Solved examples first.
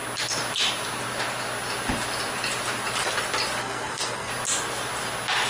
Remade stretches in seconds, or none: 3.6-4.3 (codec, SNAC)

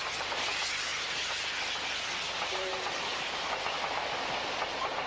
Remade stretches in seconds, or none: 0.9-4.0 (vocoder, BigVGAN v2)

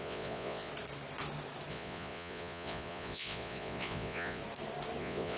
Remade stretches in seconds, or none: 0.0-0.7 (vocoder, Vocos); 1.7-4.4; 5.0-5.4

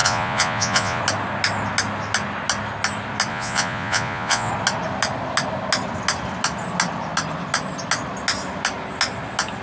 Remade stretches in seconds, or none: 0.0-1.0 (vocoder, Vocos); 3.3-4.5

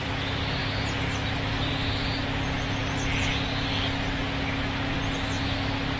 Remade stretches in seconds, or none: none

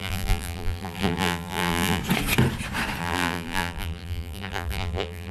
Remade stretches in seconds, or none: 0.0-2.0 (vocoder, BigVGAN v2); 3.0-5.3